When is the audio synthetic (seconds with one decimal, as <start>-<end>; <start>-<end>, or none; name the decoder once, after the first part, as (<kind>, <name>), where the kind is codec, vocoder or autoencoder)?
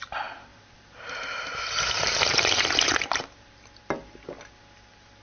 0.5-3.6 (vocoder, BigVGAN v2)